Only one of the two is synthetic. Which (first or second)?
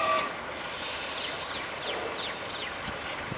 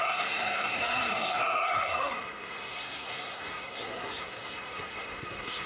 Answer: second